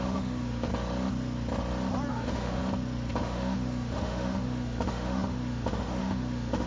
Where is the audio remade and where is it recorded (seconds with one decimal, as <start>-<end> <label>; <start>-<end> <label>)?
0.0-0.7 remade; 0.7-2.1 recorded; 2.1-2.6 remade; 2.6-3.2 recorded; 3.2-6.7 remade